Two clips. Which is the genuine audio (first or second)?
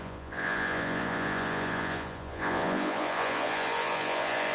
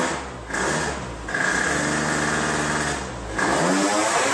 second